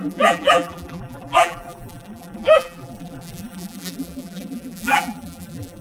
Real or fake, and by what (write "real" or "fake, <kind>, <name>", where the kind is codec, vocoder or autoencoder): fake, vocoder, BigVGAN v2